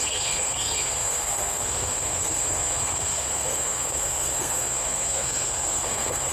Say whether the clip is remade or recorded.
remade